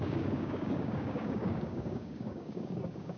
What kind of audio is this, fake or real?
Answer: fake